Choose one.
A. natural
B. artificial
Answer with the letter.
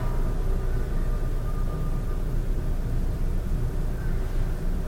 A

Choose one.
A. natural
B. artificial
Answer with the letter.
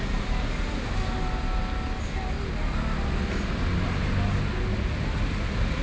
A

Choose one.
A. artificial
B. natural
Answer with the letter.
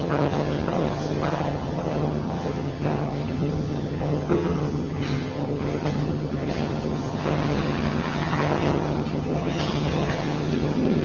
A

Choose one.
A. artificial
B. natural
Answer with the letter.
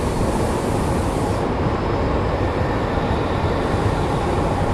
B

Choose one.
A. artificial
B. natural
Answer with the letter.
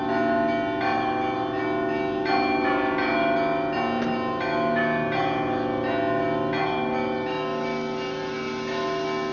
B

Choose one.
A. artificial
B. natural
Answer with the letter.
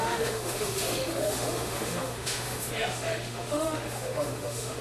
A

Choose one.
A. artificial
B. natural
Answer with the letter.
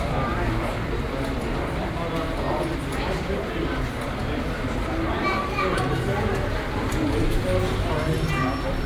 B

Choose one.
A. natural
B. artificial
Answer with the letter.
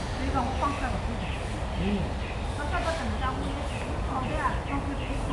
A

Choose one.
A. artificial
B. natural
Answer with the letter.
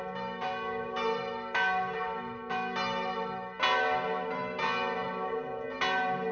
B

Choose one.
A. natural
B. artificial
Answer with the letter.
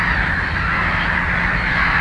A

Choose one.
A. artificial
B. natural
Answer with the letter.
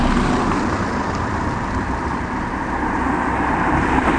A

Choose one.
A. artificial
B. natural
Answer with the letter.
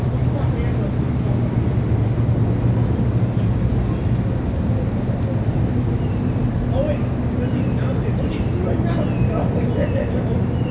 B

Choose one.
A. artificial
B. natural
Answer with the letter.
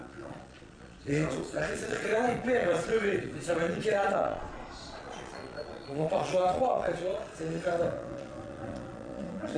A